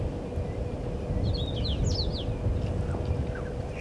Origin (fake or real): real